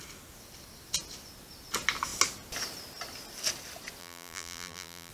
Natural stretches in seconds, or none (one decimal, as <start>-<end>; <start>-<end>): 0.0-4.0